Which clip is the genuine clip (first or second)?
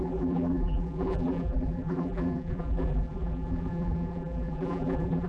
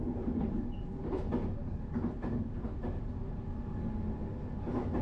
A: second